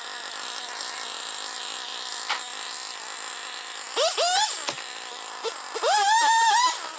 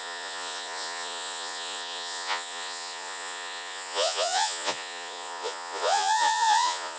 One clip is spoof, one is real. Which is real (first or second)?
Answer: first